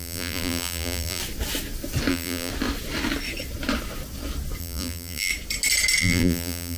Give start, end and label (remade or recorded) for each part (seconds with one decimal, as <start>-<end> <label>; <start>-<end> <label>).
0.0-1.2 remade; 1.2-2.1 recorded; 2.1-2.5 remade; 2.5-4.6 recorded; 4.6-5.3 remade; 5.3-6.0 recorded; 6.0-6.8 remade